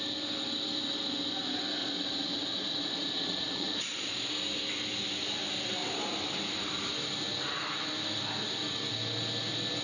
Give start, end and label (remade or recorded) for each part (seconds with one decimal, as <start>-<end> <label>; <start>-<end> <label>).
0.0-1.8 recorded; 1.8-4.3 remade; 4.3-9.8 recorded